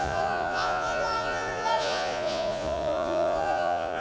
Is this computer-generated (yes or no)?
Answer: yes